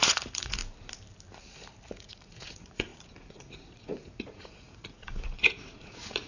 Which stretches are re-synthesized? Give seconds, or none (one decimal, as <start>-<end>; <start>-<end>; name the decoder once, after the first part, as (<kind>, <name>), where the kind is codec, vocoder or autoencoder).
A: 0.0-0.6 (vocoder, Vocos); 2.0-6.3